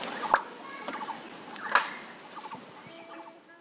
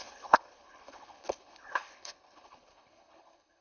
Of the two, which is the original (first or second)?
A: first